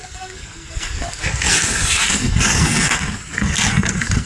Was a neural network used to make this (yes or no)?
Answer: yes